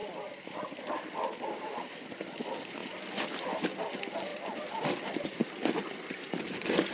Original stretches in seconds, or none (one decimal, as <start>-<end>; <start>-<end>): 0.0-2.3; 2.8-3.8